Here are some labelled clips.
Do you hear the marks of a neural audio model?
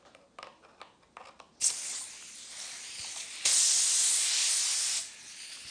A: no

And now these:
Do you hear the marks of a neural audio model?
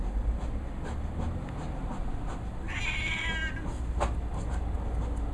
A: no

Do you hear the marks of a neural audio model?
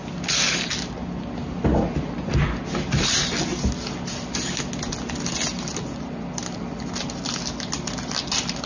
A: no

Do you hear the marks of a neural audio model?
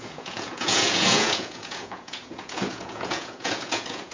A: yes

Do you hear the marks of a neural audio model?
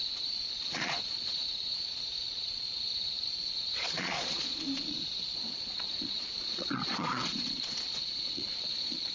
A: yes